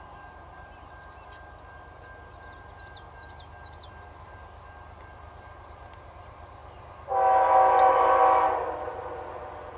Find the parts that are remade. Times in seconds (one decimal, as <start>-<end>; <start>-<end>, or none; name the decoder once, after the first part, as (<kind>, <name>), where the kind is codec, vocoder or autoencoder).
none